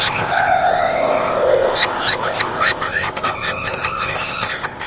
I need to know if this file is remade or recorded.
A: remade